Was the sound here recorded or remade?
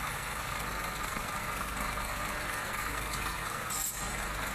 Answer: remade